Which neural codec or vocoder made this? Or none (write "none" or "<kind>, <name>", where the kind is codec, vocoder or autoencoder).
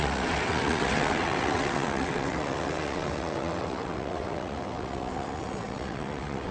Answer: vocoder, WaveNeXt